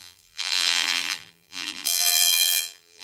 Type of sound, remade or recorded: remade